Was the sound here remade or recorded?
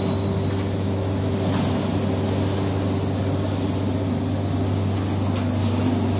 recorded